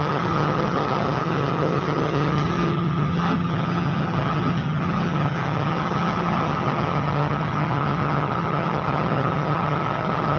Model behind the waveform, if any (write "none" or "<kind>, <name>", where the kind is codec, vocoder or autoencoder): vocoder, HiFi-GAN